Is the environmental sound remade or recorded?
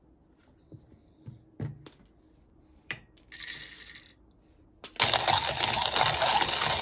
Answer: recorded